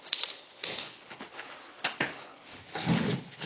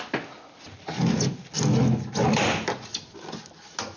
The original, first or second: second